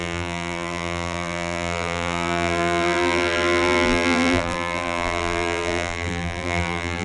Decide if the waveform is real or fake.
fake